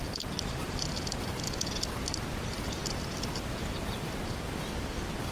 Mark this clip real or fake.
real